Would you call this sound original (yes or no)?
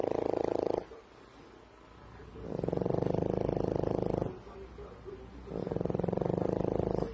yes